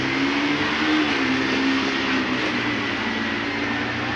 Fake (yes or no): no